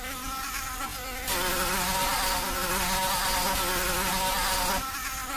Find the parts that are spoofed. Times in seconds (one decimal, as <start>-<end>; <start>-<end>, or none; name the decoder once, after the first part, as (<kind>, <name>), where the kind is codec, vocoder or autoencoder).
none